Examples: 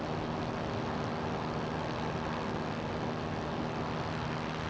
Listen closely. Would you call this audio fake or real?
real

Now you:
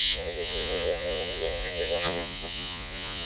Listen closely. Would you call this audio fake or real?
fake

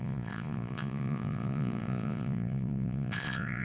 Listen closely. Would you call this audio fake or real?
fake